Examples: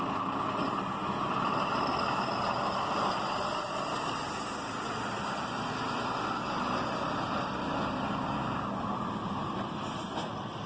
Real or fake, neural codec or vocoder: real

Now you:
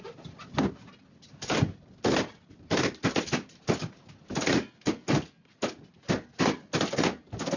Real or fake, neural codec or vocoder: real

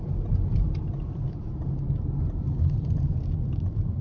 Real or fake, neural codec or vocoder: real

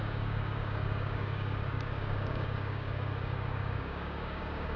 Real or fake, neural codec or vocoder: fake, codec, DAC